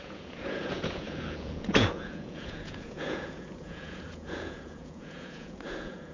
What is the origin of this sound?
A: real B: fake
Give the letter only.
B